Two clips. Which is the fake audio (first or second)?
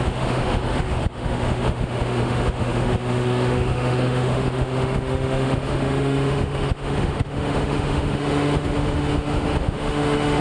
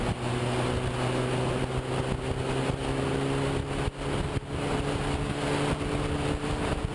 first